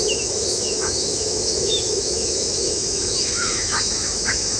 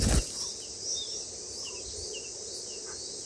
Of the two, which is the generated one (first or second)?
first